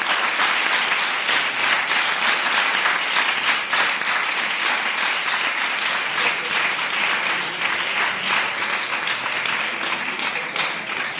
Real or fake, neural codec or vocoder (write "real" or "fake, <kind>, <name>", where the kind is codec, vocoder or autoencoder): fake, vocoder, BigVGAN v2